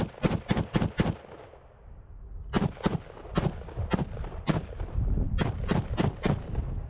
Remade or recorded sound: recorded